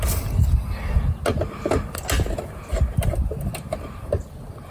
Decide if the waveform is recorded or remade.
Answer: recorded